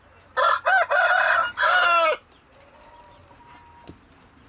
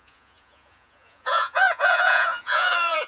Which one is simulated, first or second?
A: second